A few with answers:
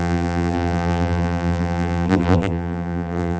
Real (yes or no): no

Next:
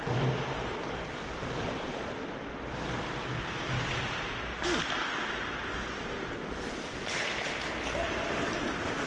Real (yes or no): yes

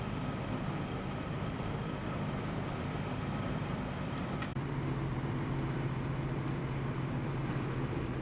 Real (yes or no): no